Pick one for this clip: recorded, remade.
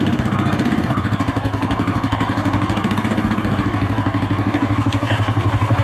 remade